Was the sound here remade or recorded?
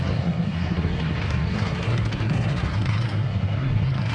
remade